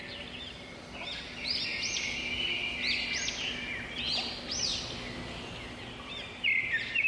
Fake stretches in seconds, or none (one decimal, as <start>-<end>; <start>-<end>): none